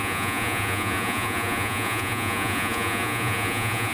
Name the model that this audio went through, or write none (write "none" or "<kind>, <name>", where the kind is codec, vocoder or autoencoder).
vocoder, Vocos